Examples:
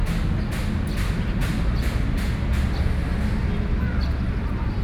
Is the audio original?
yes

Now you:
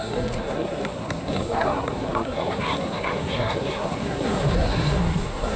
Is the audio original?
no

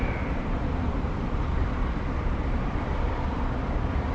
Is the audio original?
no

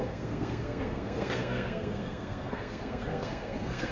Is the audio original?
no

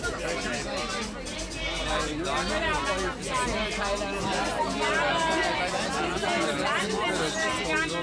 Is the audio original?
yes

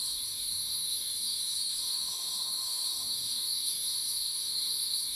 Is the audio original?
no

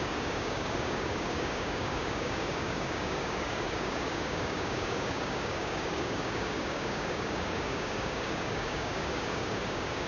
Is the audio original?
no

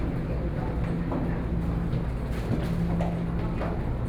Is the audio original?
yes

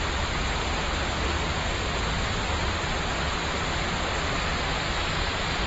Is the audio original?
yes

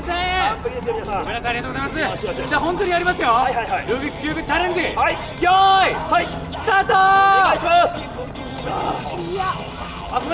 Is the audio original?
yes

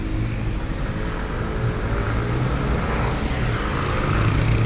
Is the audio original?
yes